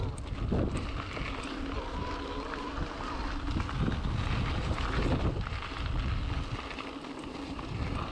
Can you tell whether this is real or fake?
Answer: real